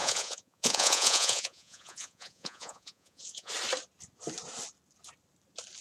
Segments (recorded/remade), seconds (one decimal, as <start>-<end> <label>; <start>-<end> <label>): 0.0-3.5 remade; 3.5-5.8 recorded